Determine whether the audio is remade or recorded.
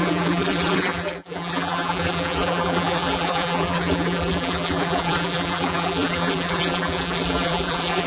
remade